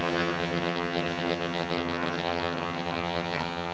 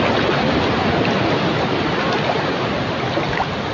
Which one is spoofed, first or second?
first